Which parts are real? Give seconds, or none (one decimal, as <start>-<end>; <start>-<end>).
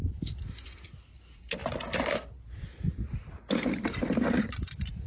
0.0-5.1